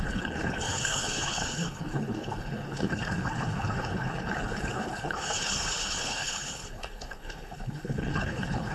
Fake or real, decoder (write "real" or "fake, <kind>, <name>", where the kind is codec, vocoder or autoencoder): fake, codec, HILCodec